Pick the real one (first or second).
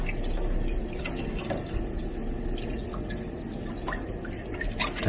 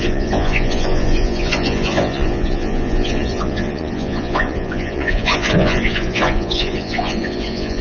first